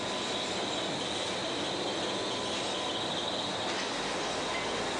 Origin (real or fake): real